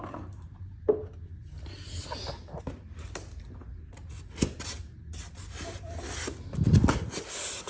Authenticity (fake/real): real